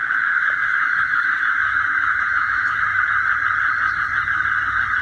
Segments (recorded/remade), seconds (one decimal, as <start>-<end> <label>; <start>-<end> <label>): 0.0-3.0 remade; 3.0-5.0 recorded